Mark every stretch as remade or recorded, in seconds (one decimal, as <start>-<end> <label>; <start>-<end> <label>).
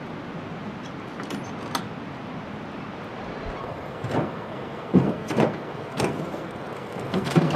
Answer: 0.0-3.6 recorded; 3.6-7.6 remade